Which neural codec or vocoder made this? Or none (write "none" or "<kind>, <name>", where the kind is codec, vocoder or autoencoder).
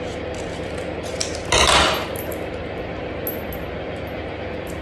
none